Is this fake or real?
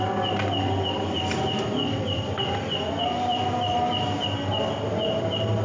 real